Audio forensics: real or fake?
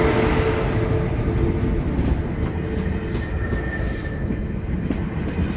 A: real